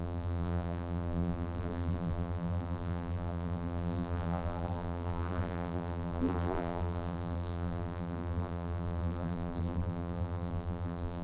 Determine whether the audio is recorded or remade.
remade